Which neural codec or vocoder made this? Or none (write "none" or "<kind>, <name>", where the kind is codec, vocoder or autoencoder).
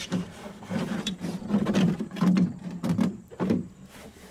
vocoder, BigVGAN v2